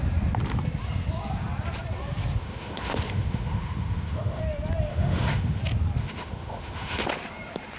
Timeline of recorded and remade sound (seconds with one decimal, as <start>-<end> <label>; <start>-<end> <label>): 0.0-2.4 recorded; 2.4-4.4 remade; 4.4-4.9 recorded; 4.9-5.6 remade; 5.6-6.0 recorded; 6.0-7.0 remade; 7.0-7.8 recorded